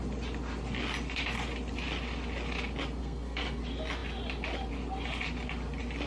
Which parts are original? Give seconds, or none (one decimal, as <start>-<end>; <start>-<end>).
0.0-3.0; 3.6-6.1